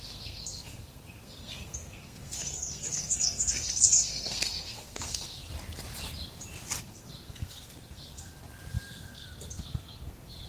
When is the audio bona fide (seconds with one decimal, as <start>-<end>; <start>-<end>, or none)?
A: 5.5-6.8; 8.3-8.9